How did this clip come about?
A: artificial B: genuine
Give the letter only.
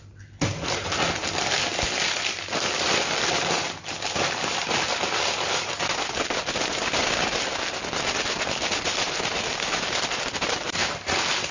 B